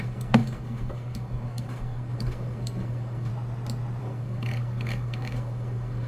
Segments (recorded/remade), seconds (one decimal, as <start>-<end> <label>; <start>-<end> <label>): 0.0-3.3 remade; 3.3-4.0 recorded; 4.0-6.1 remade